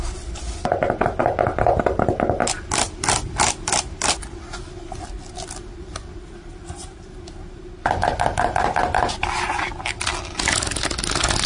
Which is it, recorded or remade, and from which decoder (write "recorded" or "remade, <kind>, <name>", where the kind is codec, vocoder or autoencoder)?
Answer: recorded